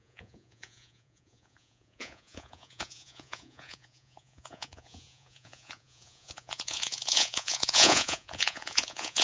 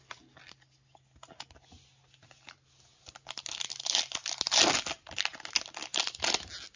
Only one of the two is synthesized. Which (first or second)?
first